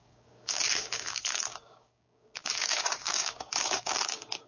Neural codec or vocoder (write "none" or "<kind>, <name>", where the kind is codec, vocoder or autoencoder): codec, DAC